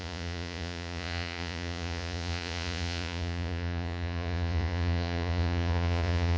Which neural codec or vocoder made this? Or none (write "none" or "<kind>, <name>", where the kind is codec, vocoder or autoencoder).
vocoder, Vocos